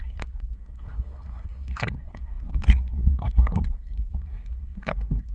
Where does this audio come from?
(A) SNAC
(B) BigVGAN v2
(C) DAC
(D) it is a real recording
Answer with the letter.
A